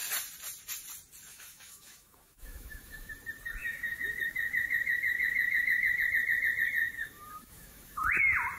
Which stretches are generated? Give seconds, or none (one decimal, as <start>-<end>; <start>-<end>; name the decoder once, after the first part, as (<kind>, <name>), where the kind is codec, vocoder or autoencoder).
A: 1.3-3.1 (autoencoder, DAC-VAE); 3.6-6.0; 6.8-8.0